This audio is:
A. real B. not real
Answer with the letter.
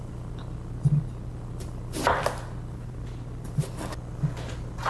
A